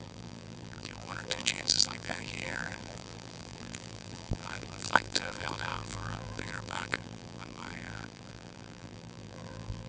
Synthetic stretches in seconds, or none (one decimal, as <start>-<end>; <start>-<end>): 0.0-9.9